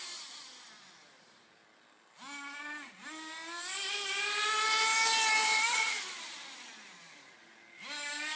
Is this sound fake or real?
real